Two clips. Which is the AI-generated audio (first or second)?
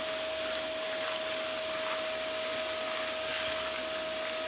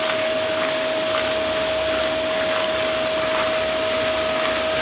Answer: second